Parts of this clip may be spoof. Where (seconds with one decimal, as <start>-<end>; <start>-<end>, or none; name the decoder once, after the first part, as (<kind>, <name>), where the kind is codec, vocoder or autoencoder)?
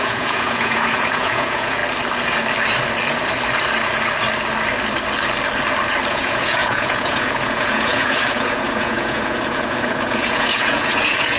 0.0-1.8 (vocoder, Vocos); 6.1-11.4